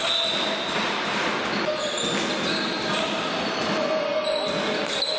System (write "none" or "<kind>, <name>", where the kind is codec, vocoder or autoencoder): none